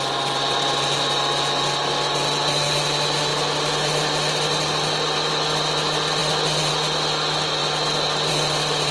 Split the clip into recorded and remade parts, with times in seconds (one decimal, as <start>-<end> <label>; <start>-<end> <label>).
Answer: 0.0-6.2 recorded; 6.2-6.7 remade; 6.7-8.9 recorded